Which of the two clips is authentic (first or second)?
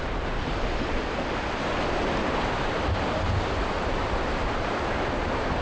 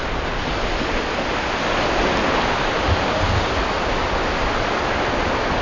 second